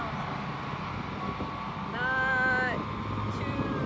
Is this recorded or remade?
recorded